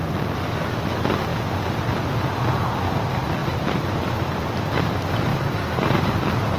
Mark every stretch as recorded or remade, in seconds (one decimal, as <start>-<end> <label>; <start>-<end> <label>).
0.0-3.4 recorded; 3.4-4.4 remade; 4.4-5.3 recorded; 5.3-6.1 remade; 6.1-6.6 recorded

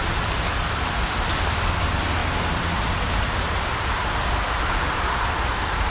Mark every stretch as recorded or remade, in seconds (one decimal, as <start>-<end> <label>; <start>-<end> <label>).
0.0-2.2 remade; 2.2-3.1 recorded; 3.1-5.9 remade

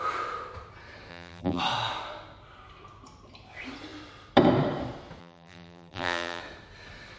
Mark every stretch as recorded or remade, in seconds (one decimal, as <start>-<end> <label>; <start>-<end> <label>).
0.0-1.1 recorded; 1.1-1.6 remade; 1.6-5.2 recorded; 5.2-6.4 remade; 6.4-7.2 recorded